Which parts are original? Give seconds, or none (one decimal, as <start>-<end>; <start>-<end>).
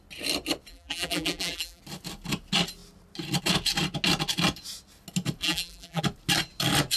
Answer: 0.0-0.7; 1.8-5.4; 6.0-7.0